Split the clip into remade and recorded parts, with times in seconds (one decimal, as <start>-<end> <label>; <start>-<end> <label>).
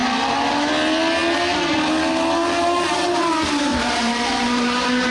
0.0-0.7 remade; 0.7-2.4 recorded; 2.4-3.2 remade; 3.2-3.7 recorded; 3.7-5.1 remade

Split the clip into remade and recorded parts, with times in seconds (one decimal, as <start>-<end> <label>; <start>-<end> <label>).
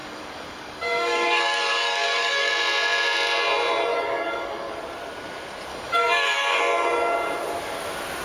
0.0-2.5 remade; 2.5-3.9 recorded; 3.9-4.8 remade; 4.8-5.7 recorded; 5.7-6.6 remade; 6.6-8.2 recorded